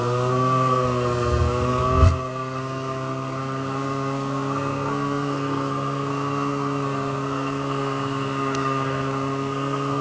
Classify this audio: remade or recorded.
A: remade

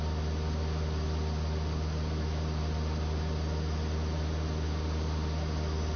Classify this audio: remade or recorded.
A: recorded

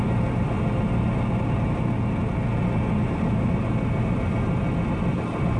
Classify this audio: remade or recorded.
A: recorded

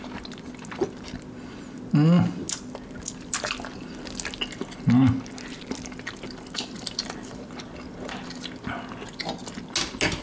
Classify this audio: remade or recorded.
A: recorded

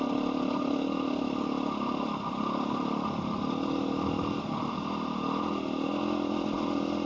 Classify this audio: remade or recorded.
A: recorded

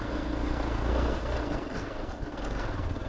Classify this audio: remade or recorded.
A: remade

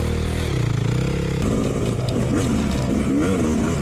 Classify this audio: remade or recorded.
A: recorded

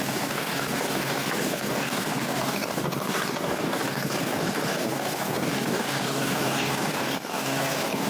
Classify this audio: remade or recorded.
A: remade